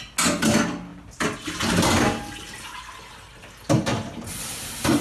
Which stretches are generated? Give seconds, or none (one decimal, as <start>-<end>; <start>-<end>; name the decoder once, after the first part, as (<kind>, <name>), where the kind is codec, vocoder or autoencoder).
none